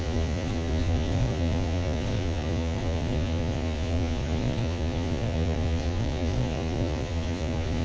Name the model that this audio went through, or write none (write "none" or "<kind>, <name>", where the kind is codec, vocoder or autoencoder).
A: vocoder, Vocos